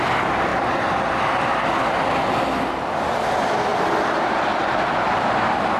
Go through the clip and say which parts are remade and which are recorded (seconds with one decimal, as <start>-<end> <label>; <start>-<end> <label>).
0.0-5.8 recorded